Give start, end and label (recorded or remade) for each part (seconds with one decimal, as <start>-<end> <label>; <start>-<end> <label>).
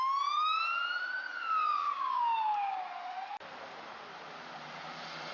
0.0-1.8 recorded; 1.8-2.8 remade; 2.8-5.3 recorded